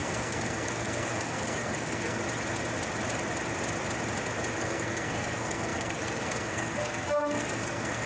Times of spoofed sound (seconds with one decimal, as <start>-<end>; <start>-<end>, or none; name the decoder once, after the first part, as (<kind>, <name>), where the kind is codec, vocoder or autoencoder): 0.0-2.2 (codec, SNAC); 4.6-8.1